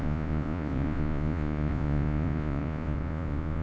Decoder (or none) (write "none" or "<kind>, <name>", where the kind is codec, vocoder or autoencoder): vocoder, Vocos